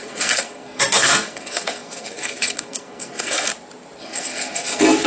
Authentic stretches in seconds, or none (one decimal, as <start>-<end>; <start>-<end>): 3.5-4.0